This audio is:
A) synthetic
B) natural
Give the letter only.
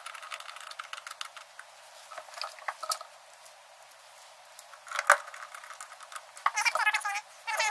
B